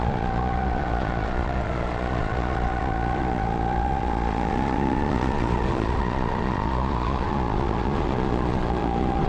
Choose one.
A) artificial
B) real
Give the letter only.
A